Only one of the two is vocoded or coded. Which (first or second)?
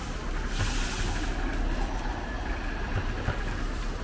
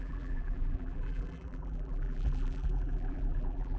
second